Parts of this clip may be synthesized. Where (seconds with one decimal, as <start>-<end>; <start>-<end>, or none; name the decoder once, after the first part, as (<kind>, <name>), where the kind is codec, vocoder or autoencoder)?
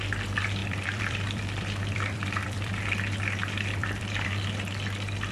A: 0.6-2.8 (vocoder, BigVGAN v2); 3.8-4.3